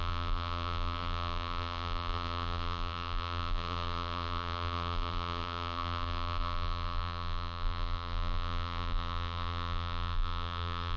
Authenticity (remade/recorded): remade